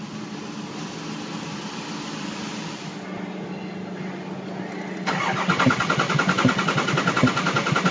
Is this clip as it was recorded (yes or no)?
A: yes